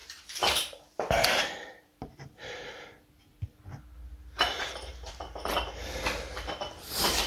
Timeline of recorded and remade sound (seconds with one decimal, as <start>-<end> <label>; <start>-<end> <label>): 0.0-2.7 remade; 2.7-4.5 recorded; 4.5-6.0 remade; 6.0-7.3 recorded

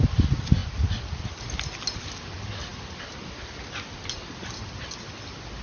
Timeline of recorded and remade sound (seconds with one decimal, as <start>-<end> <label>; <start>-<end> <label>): 0.0-0.6 recorded; 0.6-1.4 remade; 1.4-2.7 recorded; 2.7-4.9 remade; 4.9-5.6 recorded

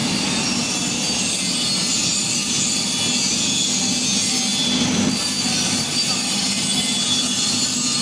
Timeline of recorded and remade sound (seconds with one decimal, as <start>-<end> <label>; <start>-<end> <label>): 0.0-0.9 remade; 0.9-4.5 recorded; 4.5-8.0 remade

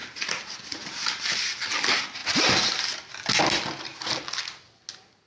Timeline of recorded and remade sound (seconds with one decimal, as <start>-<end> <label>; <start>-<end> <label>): 0.0-1.6 remade; 1.6-5.3 recorded

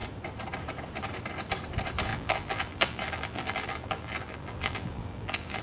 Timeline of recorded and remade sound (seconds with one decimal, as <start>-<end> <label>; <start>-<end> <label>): 0.0-2.1 recorded; 2.1-5.6 remade

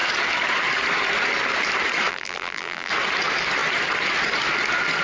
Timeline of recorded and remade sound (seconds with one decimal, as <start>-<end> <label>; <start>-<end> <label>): 0.0-2.1 recorded; 2.1-2.9 remade; 2.9-5.0 recorded

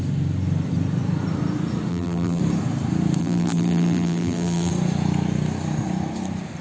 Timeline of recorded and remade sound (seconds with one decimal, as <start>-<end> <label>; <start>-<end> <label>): 0.0-1.9 recorded; 1.9-2.4 remade; 2.4-3.2 recorded; 3.2-4.7 remade; 4.7-6.6 recorded